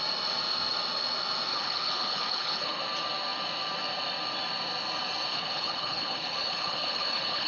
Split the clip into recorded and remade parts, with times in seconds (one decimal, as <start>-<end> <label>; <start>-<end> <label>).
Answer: 0.0-1.5 recorded; 1.5-2.8 remade; 2.8-5.3 recorded; 5.3-7.5 remade